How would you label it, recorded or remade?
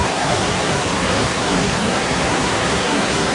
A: remade